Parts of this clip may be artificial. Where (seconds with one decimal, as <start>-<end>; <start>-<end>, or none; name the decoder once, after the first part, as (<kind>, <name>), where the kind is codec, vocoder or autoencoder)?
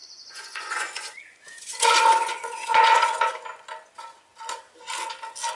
0.0-3.3 (vocoder, Vocos)